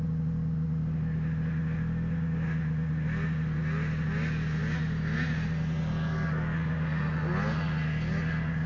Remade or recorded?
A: recorded